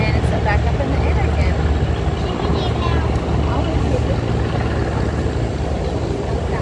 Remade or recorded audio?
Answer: recorded